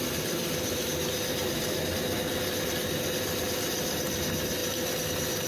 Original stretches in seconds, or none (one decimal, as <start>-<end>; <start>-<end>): 0.0-5.5